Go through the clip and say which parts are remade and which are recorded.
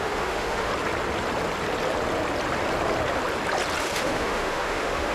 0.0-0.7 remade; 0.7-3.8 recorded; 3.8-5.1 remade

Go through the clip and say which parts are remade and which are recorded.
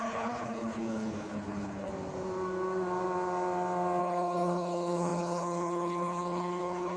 0.0-1.9 remade; 1.9-4.0 recorded; 4.0-7.0 remade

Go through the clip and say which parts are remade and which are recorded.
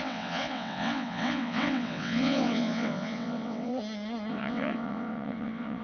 0.0-3.7 remade; 3.7-4.3 recorded; 4.3-5.8 remade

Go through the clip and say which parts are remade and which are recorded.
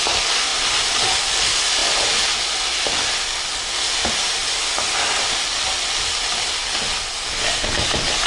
0.0-0.5 recorded; 0.5-1.2 remade; 1.2-1.8 recorded; 1.8-2.5 remade; 2.5-8.3 recorded